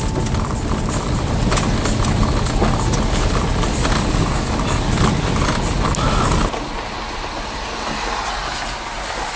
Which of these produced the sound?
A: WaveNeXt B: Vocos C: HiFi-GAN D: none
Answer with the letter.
D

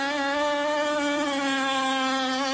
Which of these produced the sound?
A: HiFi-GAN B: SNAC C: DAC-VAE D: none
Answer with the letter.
D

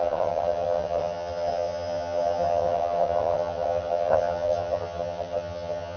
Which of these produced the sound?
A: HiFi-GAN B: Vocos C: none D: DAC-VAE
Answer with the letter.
A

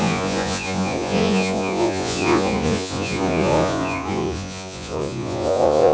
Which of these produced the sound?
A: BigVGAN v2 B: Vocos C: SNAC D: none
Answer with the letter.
B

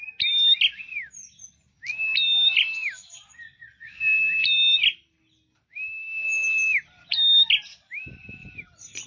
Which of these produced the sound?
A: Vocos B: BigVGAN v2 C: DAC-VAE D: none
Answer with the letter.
D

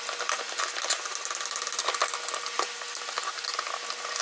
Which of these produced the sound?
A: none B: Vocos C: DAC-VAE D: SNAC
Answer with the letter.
A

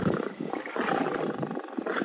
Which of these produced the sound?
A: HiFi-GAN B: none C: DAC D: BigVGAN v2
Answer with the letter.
B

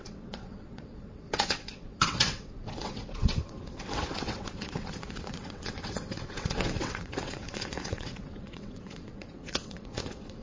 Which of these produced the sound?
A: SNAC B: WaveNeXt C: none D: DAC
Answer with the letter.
B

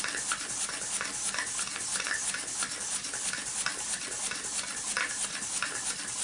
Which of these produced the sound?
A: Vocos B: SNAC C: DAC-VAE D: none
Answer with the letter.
D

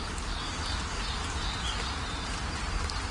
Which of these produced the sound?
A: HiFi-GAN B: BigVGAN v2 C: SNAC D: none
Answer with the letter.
D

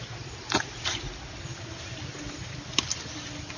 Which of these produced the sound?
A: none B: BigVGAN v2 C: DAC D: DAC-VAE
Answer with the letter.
A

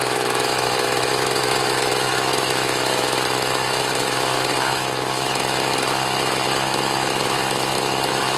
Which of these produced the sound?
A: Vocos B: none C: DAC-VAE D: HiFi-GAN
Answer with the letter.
C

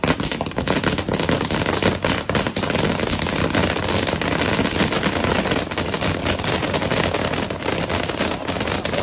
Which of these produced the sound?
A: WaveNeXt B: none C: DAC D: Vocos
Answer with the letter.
B